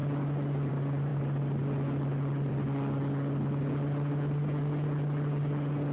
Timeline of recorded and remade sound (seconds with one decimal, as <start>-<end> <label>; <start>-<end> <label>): 0.0-5.9 recorded